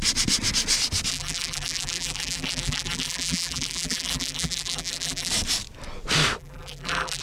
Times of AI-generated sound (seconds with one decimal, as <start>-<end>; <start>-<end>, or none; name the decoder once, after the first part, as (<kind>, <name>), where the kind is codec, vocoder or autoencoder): 1.1-5.3 (vocoder, BigVGAN v2); 6.4-7.2